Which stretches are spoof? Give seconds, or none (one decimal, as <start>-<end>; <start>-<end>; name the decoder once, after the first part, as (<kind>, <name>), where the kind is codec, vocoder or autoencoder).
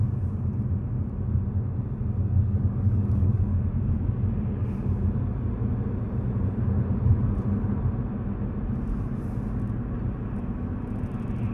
2.2-3.4 (codec, DAC)